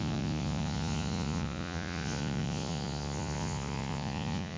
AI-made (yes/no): yes